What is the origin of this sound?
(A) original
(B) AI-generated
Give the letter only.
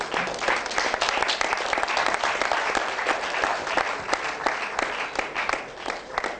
A